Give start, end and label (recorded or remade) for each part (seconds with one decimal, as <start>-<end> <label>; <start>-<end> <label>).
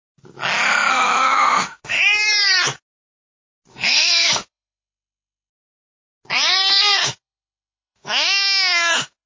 0.0-0.9 recorded; 0.9-2.0 remade; 2.0-3.7 recorded; 3.7-5.5 remade; 5.5-7.0 recorded; 7.0-9.3 remade